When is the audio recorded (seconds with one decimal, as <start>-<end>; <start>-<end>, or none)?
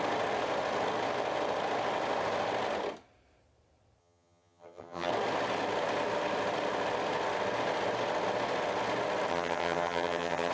0.0-4.0; 5.1-9.3